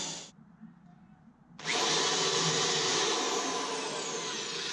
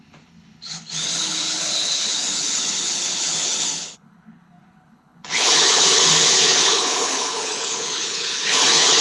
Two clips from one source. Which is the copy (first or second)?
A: second